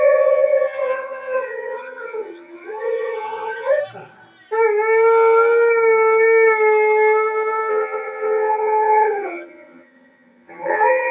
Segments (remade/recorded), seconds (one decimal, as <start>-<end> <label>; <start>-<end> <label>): 0.0-3.8 remade; 3.8-7.7 recorded; 7.7-11.1 remade